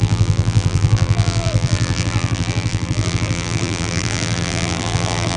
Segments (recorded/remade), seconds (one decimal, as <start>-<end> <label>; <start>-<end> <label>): 0.0-5.4 remade